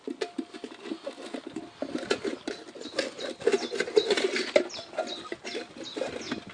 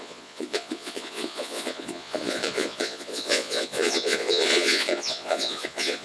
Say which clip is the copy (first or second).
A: second